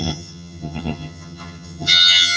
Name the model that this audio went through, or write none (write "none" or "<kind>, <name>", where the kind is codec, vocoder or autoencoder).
vocoder, HiFi-GAN